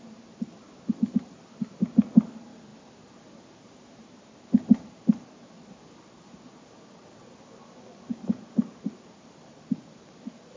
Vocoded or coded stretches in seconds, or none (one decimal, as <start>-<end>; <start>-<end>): 7.5-8.4